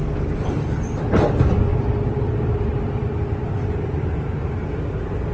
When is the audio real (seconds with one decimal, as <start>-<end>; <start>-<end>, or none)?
0.0-1.7